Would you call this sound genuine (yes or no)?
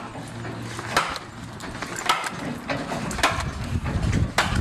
yes